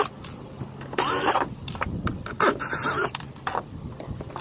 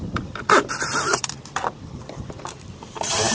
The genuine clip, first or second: first